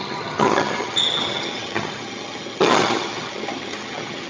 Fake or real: fake